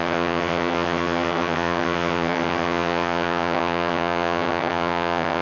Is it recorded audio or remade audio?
remade